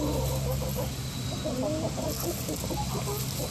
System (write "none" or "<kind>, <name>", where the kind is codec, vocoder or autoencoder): none